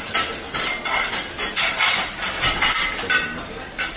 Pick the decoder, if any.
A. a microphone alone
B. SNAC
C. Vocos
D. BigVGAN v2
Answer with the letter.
A